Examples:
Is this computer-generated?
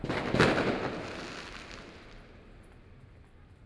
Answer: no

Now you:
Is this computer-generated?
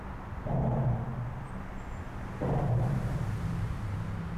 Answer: no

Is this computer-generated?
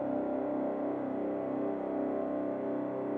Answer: no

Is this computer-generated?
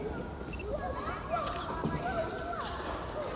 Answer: no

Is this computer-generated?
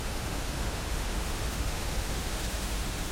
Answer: yes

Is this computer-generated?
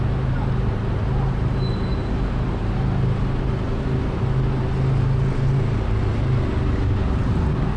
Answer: no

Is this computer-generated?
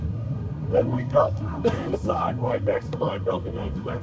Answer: yes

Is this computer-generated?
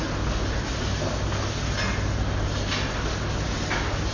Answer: no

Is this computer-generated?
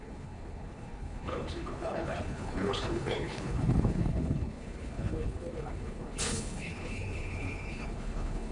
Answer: yes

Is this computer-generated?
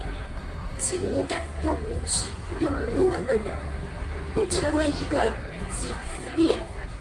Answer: yes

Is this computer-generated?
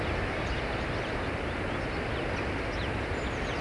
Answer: no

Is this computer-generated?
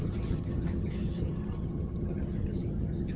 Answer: yes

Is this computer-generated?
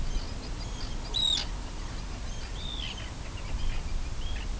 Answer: no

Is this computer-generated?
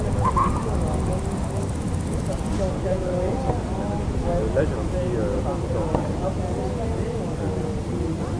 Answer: no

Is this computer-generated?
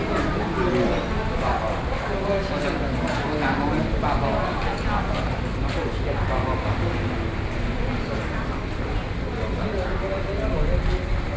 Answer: no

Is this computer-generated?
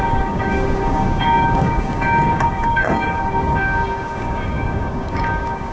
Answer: yes